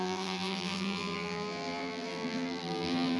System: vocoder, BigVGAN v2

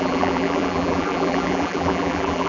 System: vocoder, BigVGAN v2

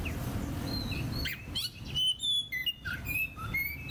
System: none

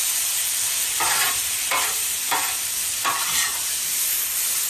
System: vocoder, BigVGAN v2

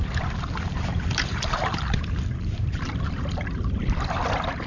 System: vocoder, BigVGAN v2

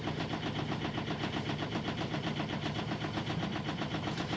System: vocoder, BigVGAN v2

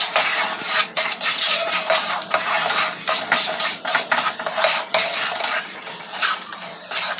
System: vocoder, BigVGAN v2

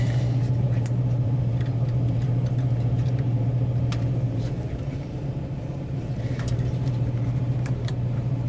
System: vocoder, BigVGAN v2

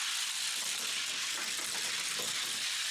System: none